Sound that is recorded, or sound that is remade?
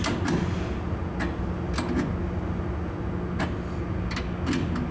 recorded